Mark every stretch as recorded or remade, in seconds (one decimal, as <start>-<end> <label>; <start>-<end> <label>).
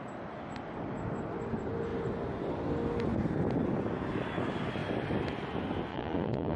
0.0-5.9 recorded; 5.9-6.6 remade